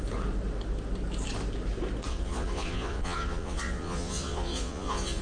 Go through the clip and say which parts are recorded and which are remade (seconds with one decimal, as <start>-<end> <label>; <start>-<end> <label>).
0.0-2.1 recorded; 2.1-5.2 remade